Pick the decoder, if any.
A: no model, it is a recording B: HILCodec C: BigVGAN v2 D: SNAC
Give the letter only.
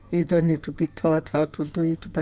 D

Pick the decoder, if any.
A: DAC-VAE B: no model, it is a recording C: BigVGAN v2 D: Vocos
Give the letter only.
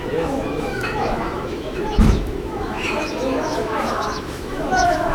A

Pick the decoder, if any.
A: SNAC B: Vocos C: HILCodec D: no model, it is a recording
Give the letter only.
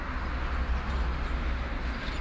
D